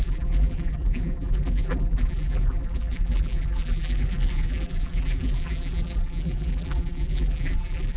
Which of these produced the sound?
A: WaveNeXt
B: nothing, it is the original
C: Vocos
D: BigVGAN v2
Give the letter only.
D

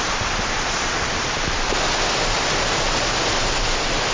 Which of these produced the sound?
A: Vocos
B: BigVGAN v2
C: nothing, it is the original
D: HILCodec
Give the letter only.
C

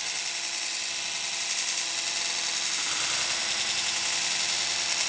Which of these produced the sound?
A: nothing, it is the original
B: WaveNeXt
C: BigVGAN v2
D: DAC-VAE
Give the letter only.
A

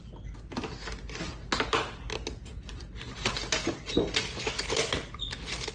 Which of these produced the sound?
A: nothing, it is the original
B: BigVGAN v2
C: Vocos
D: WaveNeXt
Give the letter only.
A